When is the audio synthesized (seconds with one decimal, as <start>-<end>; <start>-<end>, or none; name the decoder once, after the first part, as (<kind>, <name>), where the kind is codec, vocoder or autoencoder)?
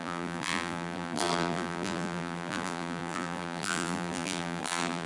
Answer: 0.0-5.1 (vocoder, BigVGAN v2)